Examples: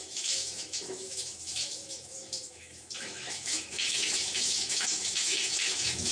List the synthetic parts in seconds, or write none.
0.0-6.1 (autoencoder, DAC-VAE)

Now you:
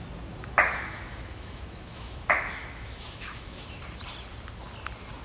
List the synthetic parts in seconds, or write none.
0.7-3.8 (autoencoder, DAC-VAE)